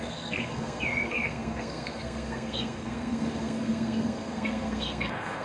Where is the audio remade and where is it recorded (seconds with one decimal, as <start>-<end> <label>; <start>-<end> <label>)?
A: 0.0-5.4 remade